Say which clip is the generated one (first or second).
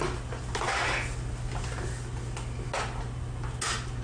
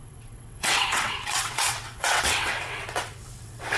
second